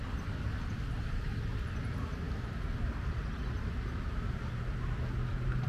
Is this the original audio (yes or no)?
yes